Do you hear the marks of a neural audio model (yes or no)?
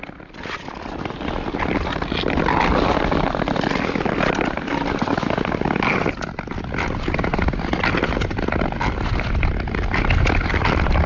no